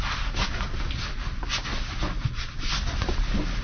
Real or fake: real